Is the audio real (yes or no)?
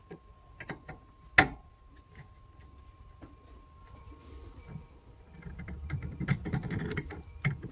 yes